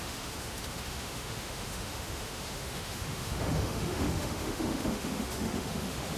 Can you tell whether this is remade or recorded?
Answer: remade